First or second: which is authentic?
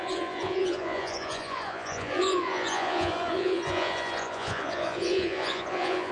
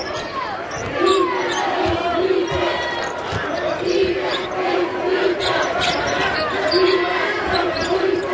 second